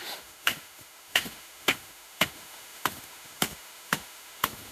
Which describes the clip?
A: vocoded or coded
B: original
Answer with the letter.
A